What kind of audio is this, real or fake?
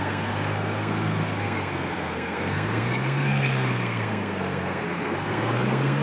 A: fake